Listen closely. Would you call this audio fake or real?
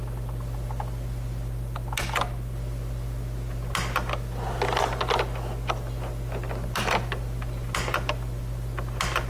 real